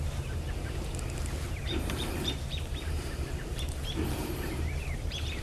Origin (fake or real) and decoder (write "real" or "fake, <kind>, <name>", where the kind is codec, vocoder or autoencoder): fake, vocoder, BigVGAN v2